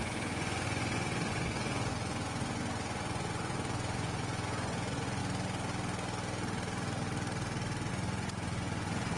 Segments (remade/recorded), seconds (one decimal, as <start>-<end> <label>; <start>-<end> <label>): 0.0-5.2 remade; 5.2-7.9 recorded; 7.9-9.2 remade